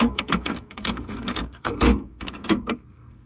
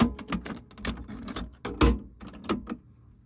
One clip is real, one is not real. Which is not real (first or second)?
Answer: first